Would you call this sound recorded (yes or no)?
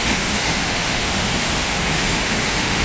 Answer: no